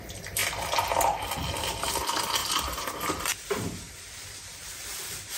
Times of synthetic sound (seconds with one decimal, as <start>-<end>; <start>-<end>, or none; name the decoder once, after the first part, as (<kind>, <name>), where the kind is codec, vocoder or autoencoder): 2.4-4.0 (vocoder, BigVGAN v2)